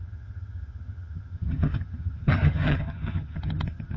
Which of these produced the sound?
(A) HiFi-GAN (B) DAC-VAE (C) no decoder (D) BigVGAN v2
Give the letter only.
A